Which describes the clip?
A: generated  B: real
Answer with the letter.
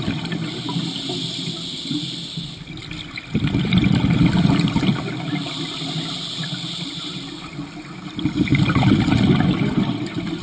B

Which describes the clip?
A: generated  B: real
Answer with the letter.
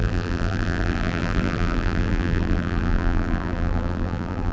A